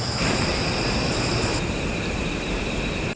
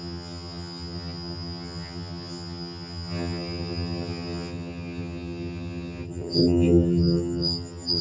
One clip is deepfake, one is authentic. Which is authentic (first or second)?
first